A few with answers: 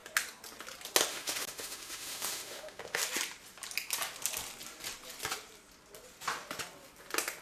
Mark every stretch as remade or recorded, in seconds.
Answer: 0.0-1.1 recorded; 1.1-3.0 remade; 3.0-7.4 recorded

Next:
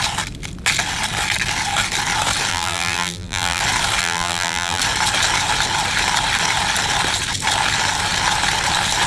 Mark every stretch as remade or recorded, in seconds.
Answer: 0.0-2.5 recorded; 2.5-3.6 remade; 3.6-4.0 recorded; 4.0-4.8 remade; 4.8-9.1 recorded